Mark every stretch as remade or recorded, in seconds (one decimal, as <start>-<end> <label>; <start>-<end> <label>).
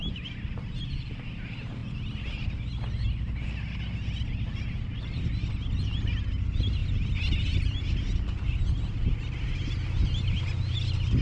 0.0-6.8 recorded; 6.8-8.7 remade; 8.7-11.2 recorded